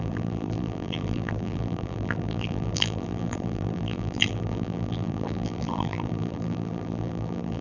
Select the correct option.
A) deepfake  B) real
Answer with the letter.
A